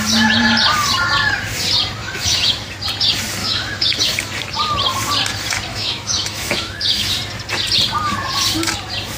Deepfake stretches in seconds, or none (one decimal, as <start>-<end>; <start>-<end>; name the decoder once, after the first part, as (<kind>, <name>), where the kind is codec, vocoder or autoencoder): 2.0-2.7 (autoencoder, DAC-VAE); 3.4-4.0; 5.7-7.1